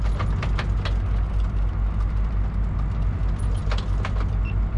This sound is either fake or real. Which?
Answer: real